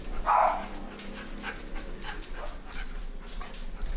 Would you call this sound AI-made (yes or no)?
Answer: no